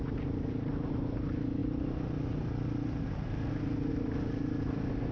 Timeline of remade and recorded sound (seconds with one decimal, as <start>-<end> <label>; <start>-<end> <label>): 0.0-5.1 recorded